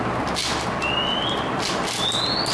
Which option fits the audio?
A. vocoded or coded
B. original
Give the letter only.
B